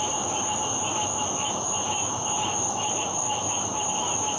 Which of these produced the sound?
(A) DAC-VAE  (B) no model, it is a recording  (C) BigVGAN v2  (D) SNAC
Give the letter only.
A